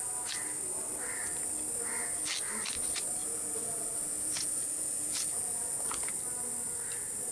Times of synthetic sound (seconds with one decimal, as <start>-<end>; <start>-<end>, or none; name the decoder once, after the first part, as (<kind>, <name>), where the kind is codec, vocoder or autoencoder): 3.2-6.1 (vocoder, Vocos)